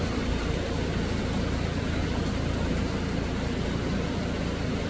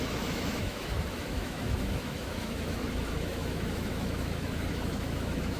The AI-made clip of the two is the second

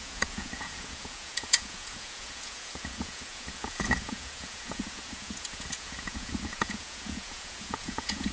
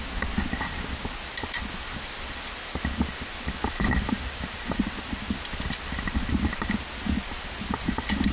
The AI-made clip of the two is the first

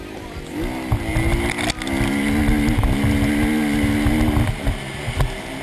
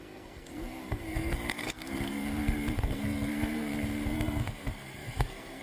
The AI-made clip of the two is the second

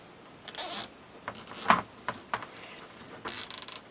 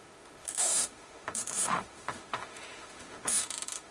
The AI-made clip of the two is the second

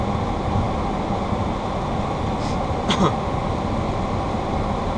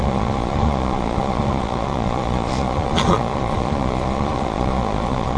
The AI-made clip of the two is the second